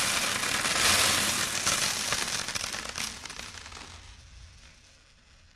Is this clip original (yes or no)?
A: yes